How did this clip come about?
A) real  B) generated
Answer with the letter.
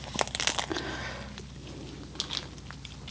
A